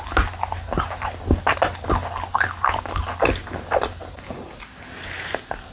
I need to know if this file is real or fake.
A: real